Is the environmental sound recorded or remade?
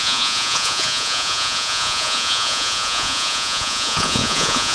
remade